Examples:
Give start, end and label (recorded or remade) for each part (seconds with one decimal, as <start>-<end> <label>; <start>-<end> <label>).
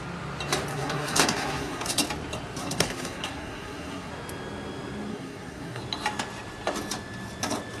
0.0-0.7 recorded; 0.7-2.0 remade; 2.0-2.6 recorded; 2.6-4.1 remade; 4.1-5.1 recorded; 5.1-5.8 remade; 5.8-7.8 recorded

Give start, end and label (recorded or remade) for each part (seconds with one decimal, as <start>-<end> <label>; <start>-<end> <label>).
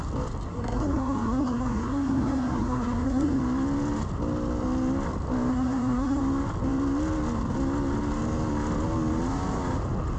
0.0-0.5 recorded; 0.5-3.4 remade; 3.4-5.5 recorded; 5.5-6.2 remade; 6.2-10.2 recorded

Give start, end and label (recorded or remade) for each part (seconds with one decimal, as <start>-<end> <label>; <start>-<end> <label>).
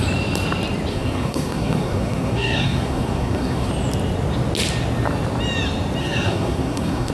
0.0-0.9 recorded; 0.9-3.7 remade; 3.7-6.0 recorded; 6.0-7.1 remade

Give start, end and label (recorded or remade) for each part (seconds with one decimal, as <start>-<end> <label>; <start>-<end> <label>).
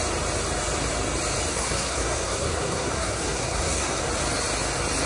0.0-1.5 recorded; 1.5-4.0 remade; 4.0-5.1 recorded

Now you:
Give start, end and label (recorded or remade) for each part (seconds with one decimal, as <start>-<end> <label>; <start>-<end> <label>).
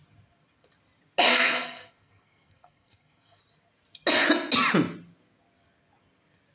0.0-1.3 recorded; 1.3-3.4 remade; 3.4-6.5 recorded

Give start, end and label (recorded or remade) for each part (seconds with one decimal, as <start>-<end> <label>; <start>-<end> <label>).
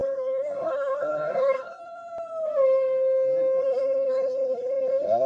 0.0-1.8 remade; 1.8-3.6 recorded; 3.6-5.3 remade